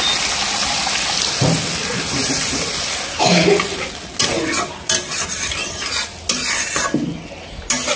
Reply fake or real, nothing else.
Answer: real